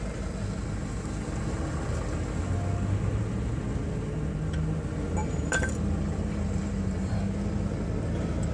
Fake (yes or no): no